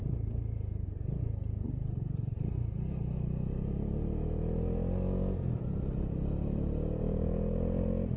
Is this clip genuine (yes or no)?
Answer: yes